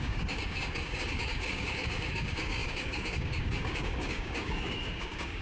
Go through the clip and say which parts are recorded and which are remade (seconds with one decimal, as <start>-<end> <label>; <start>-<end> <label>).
0.0-5.4 remade